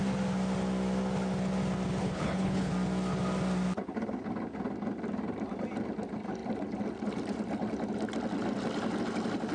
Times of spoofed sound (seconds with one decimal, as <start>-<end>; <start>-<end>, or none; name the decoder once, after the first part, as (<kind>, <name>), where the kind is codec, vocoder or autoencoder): 2.0-2.7 (codec, HILCodec)